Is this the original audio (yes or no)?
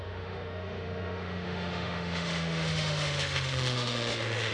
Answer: no